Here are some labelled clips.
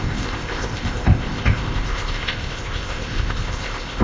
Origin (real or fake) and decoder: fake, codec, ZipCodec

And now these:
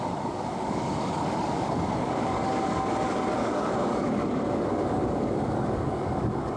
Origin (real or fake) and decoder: fake, codec, DAC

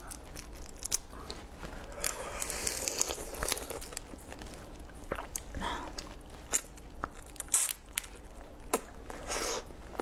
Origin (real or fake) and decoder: real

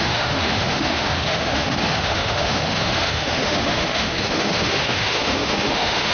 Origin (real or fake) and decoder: fake, autoencoder, DAC-VAE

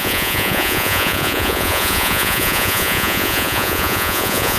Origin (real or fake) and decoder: fake, vocoder, Vocos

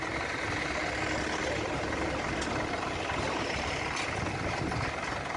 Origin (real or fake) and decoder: real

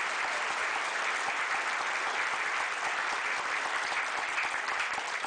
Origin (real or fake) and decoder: real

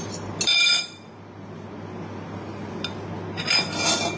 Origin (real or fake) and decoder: real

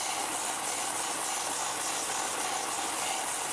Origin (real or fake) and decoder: real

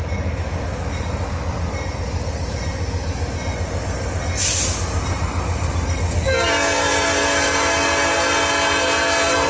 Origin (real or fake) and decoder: real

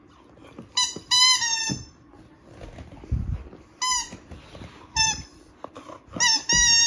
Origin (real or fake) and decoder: real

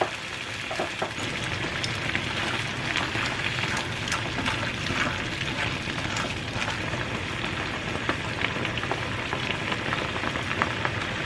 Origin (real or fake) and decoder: real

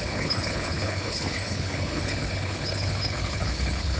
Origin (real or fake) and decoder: fake, codec, HILCodec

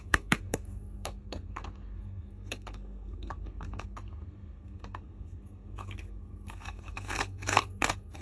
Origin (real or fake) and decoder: fake, codec, SNAC